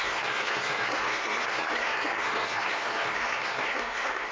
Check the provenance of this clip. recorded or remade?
remade